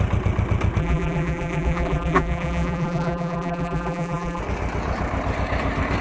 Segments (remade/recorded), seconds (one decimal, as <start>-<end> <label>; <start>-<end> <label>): 0.0-0.8 recorded; 0.8-4.4 remade; 4.4-6.0 recorded

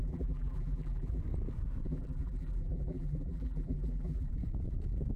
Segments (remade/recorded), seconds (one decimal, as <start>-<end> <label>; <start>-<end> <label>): 0.0-1.2 remade; 1.2-1.9 recorded; 1.9-4.3 remade; 4.3-5.2 recorded